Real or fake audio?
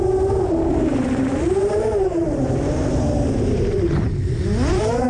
fake